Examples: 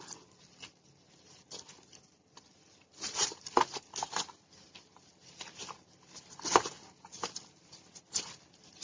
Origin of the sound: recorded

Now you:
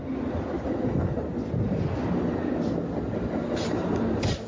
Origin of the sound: recorded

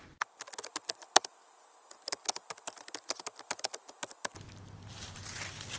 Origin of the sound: recorded